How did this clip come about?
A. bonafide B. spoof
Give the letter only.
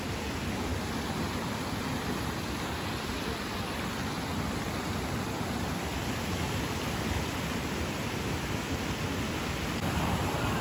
A